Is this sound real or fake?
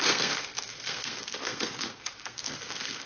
fake